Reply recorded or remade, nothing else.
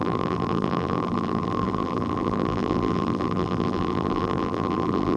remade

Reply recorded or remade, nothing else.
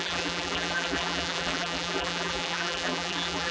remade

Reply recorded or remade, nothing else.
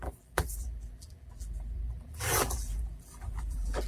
remade